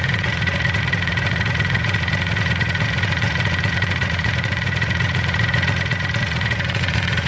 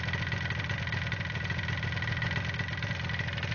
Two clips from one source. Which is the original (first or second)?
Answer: second